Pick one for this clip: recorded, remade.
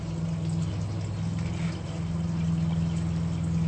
recorded